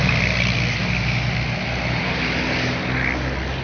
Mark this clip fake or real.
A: real